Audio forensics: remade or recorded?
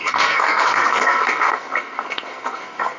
remade